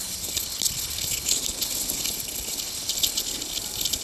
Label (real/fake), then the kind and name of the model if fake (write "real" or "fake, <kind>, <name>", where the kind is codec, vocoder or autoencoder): real